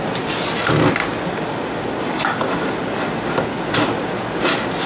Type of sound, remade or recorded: recorded